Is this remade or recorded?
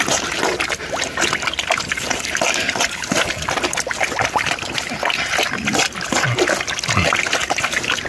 recorded